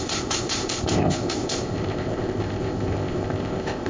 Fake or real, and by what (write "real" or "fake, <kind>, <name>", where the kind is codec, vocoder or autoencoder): fake, codec, ZipCodec